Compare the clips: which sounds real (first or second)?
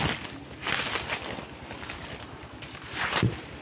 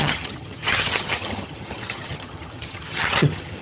first